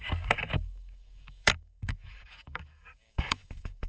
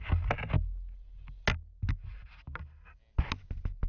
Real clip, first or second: second